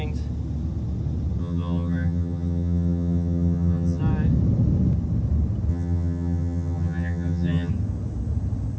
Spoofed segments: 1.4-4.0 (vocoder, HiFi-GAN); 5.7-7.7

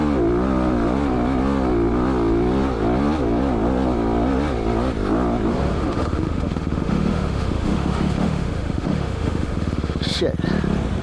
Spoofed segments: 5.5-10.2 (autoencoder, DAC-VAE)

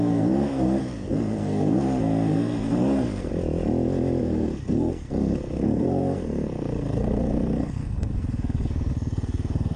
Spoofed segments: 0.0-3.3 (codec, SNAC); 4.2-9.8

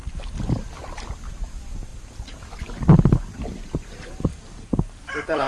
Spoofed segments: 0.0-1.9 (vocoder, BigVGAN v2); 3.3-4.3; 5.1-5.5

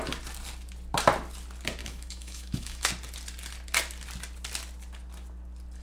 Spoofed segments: 1.8-2.9 (autoencoder, DAC-VAE)